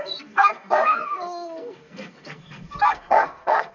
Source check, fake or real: fake